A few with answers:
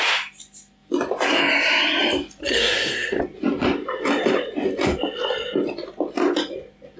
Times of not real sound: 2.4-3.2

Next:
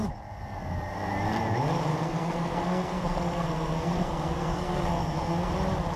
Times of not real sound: 1.9-5.5

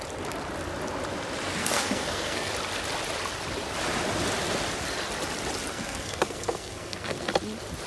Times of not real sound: 1.6-2.5; 5.7-7.3